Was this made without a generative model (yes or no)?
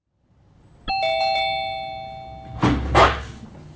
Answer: yes